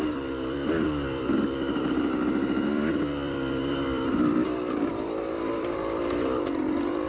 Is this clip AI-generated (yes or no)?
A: yes